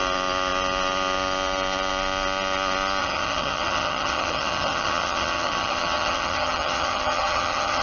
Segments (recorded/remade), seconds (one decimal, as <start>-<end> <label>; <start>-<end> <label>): 0.0-3.0 recorded; 3.0-7.8 remade